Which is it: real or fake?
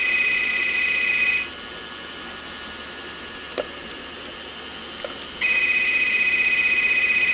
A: real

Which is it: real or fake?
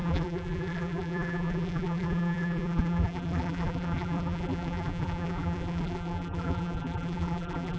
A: fake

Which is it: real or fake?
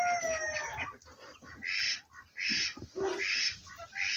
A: real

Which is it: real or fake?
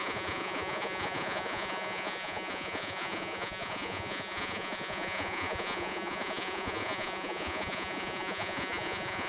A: fake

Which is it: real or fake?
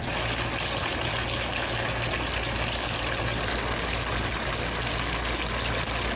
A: real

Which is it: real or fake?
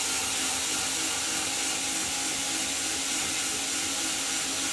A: real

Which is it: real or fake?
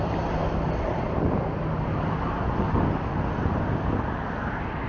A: real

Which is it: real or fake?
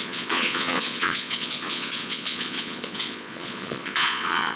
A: fake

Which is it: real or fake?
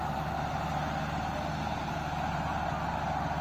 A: real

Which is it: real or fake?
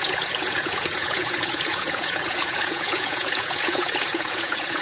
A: fake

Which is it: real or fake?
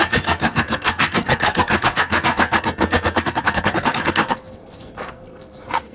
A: fake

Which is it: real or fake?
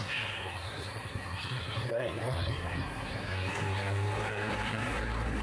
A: fake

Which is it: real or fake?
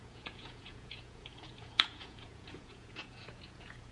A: fake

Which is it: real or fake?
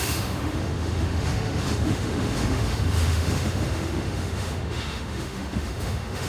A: fake